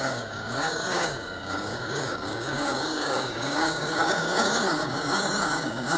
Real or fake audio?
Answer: fake